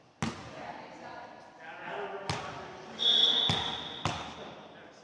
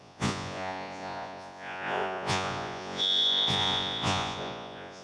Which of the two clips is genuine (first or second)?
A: first